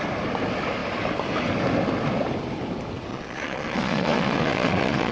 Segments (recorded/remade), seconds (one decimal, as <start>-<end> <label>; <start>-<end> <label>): 0.0-3.1 recorded; 3.1-5.1 remade